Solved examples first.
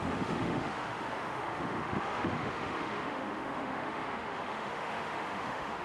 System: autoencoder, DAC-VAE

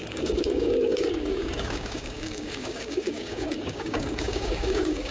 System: codec, DAC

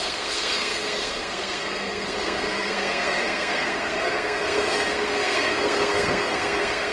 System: codec, SNAC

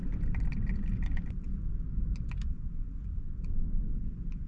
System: none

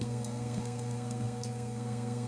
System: codec, SNAC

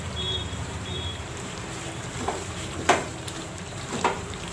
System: vocoder, BigVGAN v2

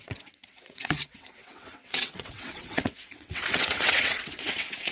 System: vocoder, WaveNeXt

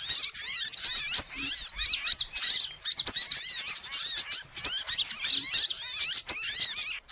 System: none